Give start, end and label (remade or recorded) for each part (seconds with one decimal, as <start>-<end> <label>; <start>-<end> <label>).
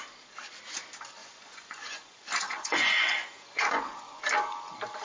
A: 0.0-1.2 recorded; 1.2-4.2 remade; 4.2-5.0 recorded